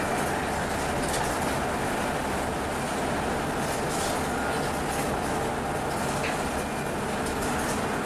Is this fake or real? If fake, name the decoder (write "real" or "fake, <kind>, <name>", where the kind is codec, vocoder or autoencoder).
real